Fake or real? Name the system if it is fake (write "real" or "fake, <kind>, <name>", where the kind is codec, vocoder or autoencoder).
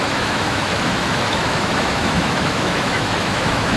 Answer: fake, autoencoder, DAC-VAE